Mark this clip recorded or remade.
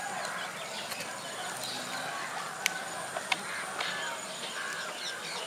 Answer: recorded